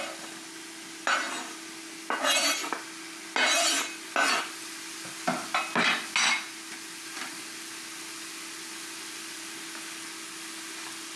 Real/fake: real